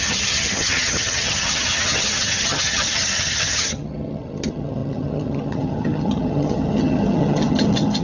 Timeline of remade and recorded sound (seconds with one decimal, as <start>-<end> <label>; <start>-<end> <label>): 0.0-8.0 remade